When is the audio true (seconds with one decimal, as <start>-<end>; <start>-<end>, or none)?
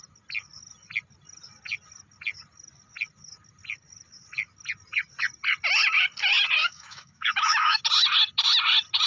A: 0.0-6.6; 7.8-9.1